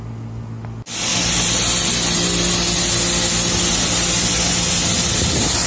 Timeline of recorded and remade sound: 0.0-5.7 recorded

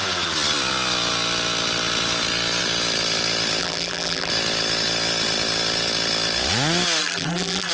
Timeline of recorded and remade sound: 0.0-3.6 recorded; 3.6-4.3 remade; 4.3-7.0 recorded; 7.0-7.7 remade

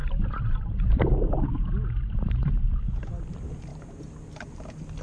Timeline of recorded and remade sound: 0.0-5.0 recorded

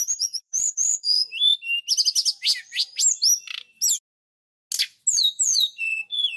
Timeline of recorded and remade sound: 0.0-1.3 remade; 1.3-5.1 recorded; 5.1-6.4 remade

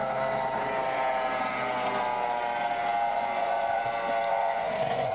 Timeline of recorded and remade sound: 0.0-3.1 recorded; 3.1-3.8 remade; 3.8-4.3 recorded; 4.3-5.1 remade

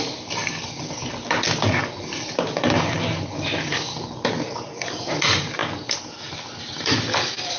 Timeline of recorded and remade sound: 0.0-7.6 recorded

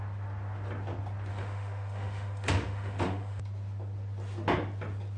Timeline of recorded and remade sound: 0.0-1.3 recorded; 1.3-3.4 remade; 3.4-5.2 recorded